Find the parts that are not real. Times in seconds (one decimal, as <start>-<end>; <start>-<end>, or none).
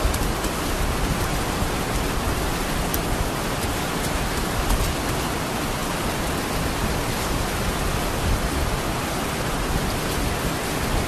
none